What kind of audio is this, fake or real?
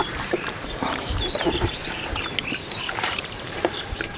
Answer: fake